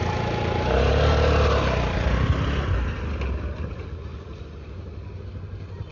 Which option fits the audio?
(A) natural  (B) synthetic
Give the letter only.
A